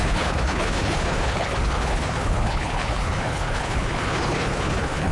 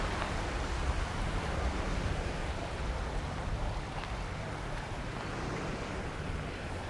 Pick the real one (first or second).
second